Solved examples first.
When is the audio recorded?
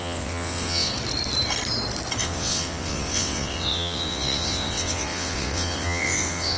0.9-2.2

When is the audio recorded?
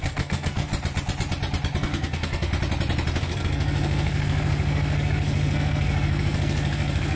0.7-1.8; 2.5-3.2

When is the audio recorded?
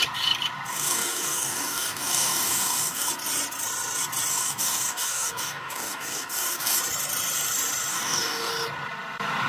0.0-0.7; 3.1-4.3; 6.8-7.9; 8.5-9.5